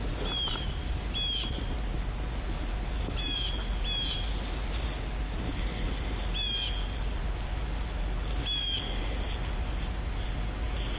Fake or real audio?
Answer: real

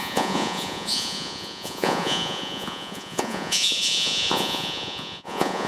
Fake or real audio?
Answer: fake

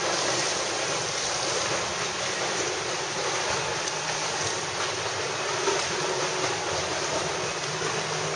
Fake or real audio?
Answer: real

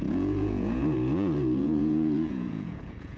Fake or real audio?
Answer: fake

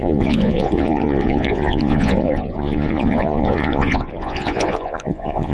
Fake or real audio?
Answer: fake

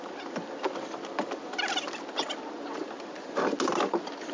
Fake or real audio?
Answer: real